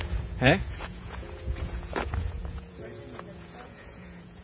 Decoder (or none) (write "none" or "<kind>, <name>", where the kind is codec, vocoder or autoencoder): vocoder, Vocos